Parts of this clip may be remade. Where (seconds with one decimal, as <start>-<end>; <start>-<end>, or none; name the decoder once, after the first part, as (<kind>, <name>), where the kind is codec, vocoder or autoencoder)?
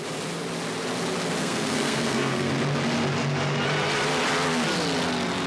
1.4-2.5 (codec, SNAC)